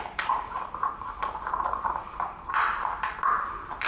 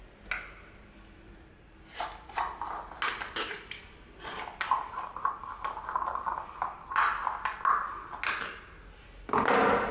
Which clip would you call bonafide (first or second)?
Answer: second